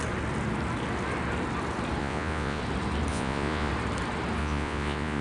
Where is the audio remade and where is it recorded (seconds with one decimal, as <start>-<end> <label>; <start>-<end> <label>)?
0.0-2.0 recorded; 2.0-2.6 remade; 2.6-3.1 recorded; 3.1-3.7 remade; 3.7-4.4 recorded; 4.4-5.2 remade